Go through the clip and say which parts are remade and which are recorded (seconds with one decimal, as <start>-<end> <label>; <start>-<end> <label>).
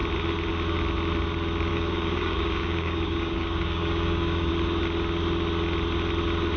0.0-1.7 recorded; 1.7-4.5 remade; 4.5-6.6 recorded